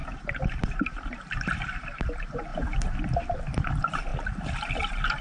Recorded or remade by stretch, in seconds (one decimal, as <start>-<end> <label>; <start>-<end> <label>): 0.0-0.6 recorded; 0.6-2.5 remade; 2.5-3.0 recorded; 3.0-4.1 remade; 4.1-5.2 recorded